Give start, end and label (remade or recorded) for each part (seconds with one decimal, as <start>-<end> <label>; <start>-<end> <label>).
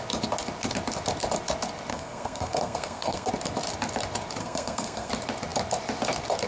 0.0-1.9 recorded; 1.9-3.3 remade; 3.3-4.4 recorded; 4.4-5.1 remade; 5.1-6.5 recorded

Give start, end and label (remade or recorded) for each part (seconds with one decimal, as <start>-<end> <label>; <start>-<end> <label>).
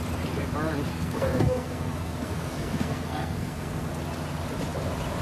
0.0-0.9 recorded; 0.9-3.9 remade; 3.9-5.2 recorded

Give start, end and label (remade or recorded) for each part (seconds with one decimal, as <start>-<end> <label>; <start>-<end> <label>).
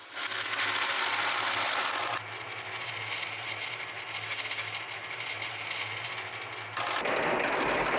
0.0-8.0 recorded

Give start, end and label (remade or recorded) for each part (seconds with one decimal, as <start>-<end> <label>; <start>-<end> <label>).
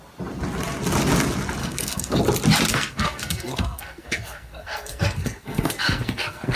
0.0-1.6 recorded; 1.6-2.2 remade; 2.2-2.7 recorded; 2.7-6.6 remade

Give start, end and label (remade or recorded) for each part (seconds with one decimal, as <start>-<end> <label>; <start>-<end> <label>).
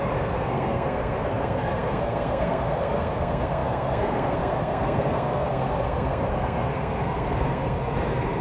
0.0-8.4 remade